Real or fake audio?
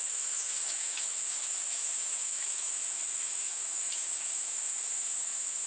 fake